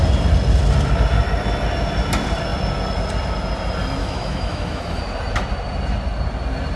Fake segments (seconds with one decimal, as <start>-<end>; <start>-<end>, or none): 4.0-5.0